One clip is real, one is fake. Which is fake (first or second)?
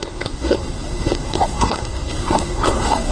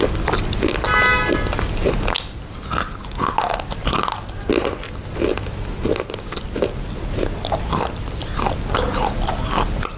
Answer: first